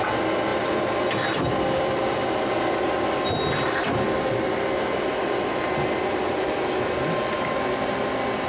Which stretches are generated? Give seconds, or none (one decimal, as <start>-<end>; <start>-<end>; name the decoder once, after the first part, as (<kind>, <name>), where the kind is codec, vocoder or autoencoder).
none